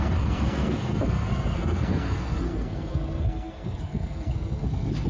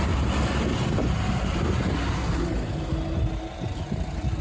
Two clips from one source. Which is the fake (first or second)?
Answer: first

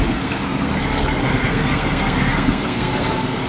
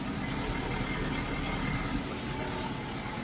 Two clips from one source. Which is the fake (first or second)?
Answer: first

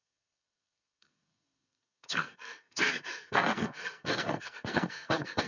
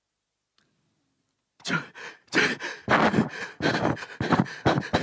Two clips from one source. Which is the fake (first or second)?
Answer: first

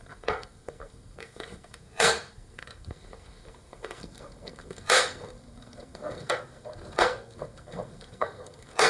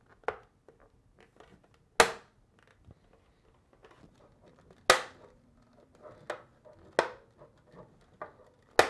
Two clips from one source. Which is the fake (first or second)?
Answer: first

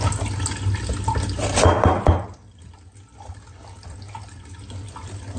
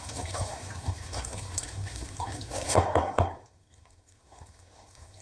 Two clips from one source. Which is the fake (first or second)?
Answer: second